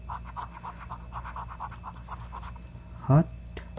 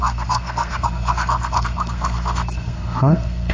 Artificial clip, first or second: second